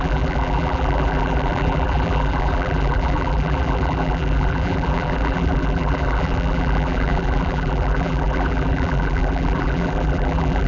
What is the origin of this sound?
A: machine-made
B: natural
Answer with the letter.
A